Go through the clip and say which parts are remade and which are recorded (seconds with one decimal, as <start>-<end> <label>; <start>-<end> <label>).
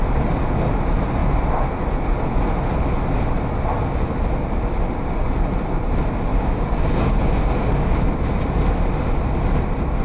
0.0-6.3 recorded; 6.3-8.0 remade; 8.0-10.0 recorded